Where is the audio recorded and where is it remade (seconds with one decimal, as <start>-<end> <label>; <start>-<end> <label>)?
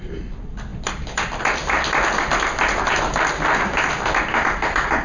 0.0-5.0 recorded